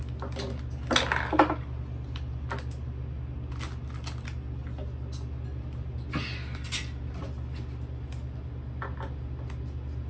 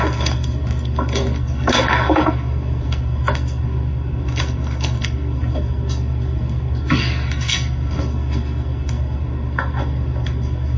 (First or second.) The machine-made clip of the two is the second